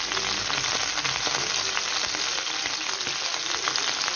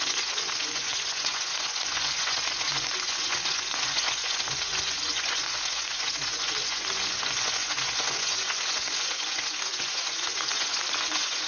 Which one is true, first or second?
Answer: first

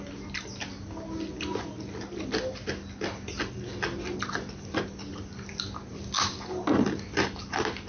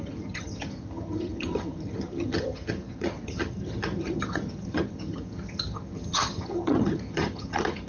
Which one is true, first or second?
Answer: first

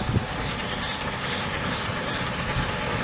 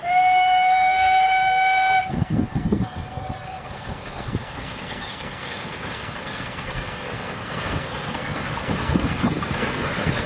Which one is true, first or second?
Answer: first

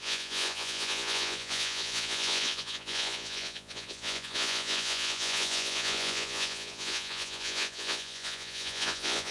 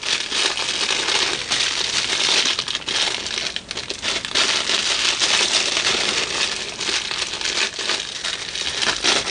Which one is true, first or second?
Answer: second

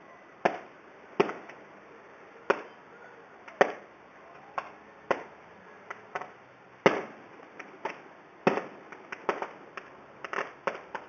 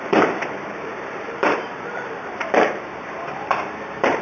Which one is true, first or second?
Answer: first